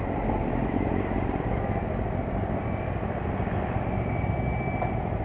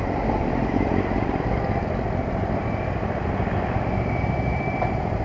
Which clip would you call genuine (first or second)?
first